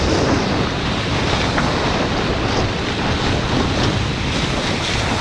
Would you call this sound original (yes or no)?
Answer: yes